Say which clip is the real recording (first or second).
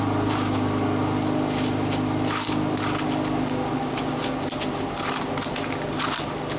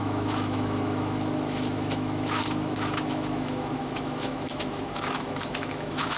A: first